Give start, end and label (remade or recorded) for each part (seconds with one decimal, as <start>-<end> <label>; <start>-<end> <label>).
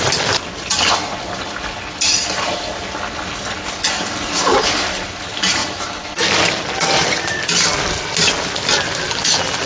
0.0-9.7 recorded